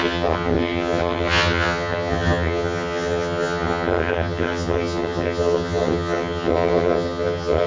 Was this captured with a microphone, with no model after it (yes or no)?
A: no